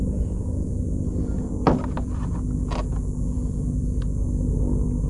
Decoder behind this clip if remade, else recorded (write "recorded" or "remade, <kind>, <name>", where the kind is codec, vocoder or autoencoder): recorded